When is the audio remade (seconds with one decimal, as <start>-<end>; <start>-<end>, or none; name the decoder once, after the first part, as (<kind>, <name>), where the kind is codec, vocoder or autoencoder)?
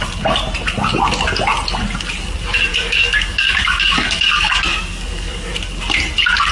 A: 2.7-5.5 (codec, DAC)